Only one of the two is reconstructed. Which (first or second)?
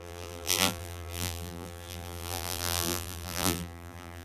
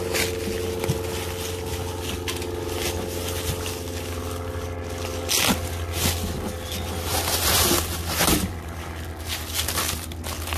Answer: first